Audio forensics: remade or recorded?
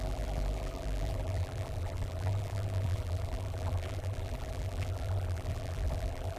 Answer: remade